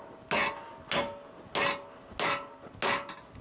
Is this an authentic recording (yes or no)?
yes